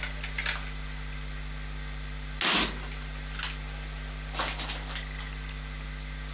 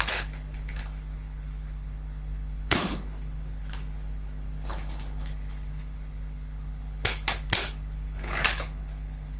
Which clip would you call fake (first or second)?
second